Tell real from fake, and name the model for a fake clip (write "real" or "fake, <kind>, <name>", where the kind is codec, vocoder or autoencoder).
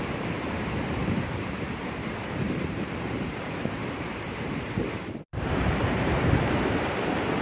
fake, vocoder, BigVGAN v2